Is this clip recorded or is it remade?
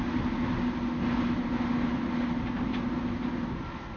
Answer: recorded